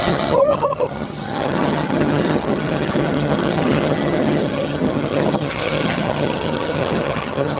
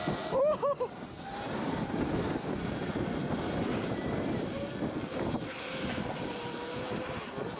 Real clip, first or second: second